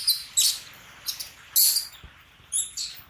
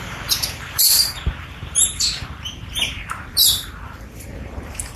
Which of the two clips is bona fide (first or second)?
first